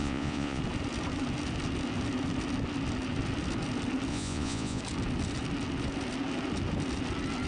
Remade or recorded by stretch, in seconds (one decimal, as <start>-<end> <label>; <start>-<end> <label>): 0.0-0.6 remade; 0.6-4.1 recorded; 4.1-4.8 remade; 4.8-7.5 recorded